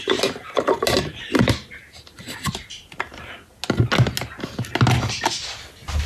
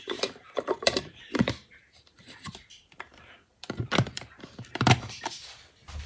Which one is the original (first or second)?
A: first